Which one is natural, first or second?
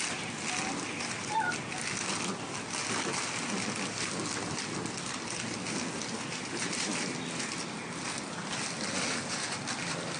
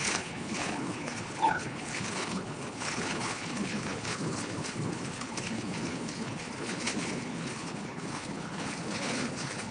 first